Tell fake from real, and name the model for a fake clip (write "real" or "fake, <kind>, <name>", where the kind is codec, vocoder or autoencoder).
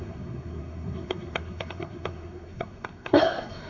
fake, codec, SNAC